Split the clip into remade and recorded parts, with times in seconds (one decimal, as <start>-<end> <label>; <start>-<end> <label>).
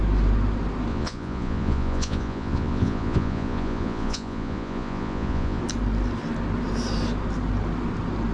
0.0-0.9 recorded; 0.9-5.6 remade; 5.6-8.3 recorded